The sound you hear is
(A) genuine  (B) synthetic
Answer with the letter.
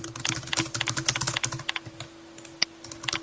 A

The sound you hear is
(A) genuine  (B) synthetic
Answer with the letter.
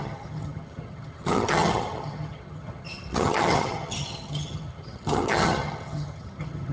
B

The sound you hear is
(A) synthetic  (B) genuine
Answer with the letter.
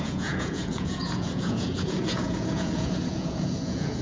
A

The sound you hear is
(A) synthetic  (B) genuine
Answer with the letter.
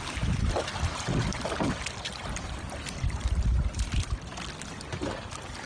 B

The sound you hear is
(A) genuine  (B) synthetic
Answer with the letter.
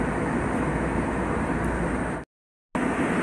A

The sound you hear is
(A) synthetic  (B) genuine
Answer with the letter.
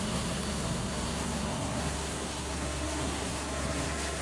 A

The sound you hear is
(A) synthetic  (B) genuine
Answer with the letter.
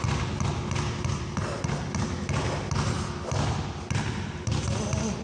B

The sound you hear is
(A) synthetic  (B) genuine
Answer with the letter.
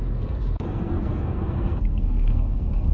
A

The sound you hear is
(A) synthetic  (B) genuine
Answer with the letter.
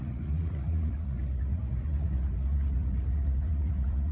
A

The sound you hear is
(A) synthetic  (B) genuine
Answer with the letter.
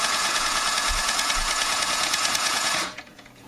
A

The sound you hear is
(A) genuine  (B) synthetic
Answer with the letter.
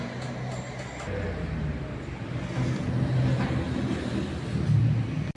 A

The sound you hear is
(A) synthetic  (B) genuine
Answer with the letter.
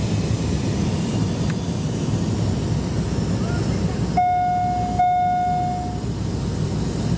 B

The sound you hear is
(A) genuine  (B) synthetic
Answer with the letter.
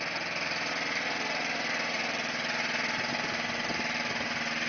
A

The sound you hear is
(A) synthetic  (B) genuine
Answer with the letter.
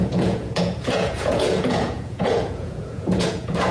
A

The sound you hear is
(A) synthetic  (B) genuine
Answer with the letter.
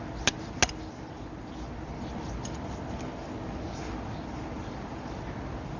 B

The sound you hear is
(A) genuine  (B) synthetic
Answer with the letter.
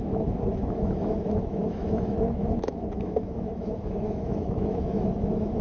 B